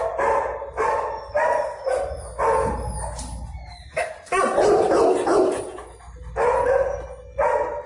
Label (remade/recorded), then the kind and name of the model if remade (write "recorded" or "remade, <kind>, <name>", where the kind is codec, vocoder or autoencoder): recorded